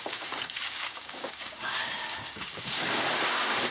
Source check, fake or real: fake